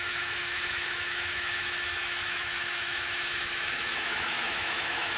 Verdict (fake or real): fake